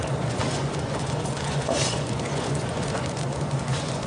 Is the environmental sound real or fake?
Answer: fake